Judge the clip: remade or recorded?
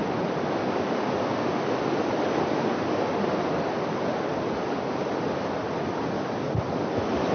recorded